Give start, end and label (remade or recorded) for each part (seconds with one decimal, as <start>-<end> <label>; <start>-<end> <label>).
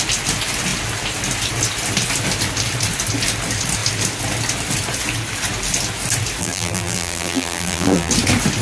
0.0-6.4 recorded; 6.4-8.1 remade; 8.1-8.6 recorded